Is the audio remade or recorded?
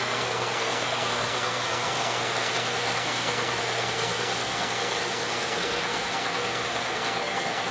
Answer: remade